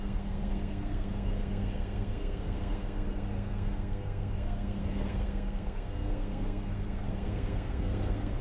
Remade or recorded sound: remade